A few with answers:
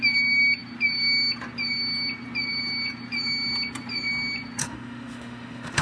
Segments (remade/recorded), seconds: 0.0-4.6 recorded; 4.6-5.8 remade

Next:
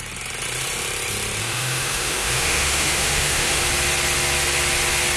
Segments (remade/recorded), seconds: 0.0-1.4 recorded; 1.4-3.6 remade; 3.6-5.2 recorded